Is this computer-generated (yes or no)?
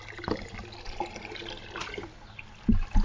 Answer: no